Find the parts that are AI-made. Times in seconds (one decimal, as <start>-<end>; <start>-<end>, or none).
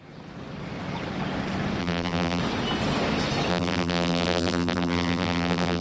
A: 1.8-2.4; 3.5-5.8